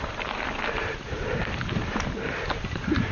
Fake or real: real